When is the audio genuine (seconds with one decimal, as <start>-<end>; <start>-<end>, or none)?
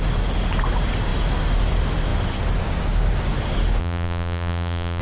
0.0-3.8